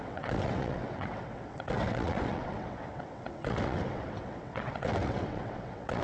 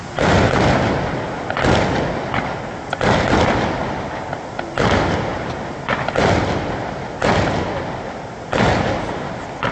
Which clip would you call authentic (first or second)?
second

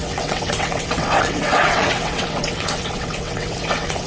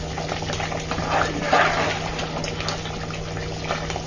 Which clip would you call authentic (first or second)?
second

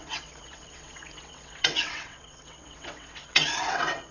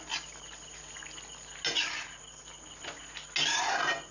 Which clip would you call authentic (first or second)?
second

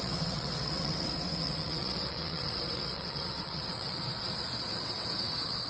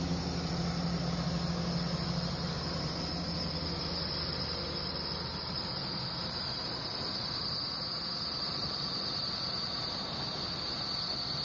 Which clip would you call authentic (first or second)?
second